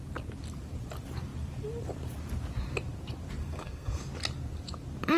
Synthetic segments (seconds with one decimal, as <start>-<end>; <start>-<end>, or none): 3.4-4.0